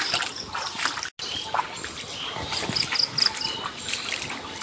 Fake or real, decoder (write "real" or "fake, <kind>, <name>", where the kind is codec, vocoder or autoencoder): real